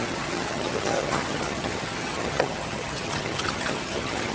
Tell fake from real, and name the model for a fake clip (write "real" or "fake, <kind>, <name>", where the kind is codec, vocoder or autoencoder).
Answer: fake, vocoder, HiFi-GAN